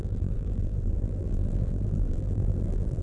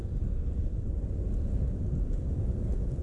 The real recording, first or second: second